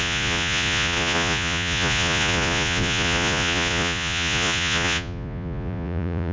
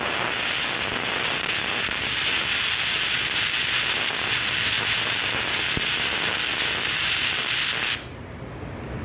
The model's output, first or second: first